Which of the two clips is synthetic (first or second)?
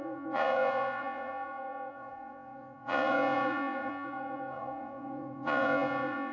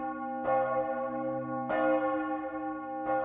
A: first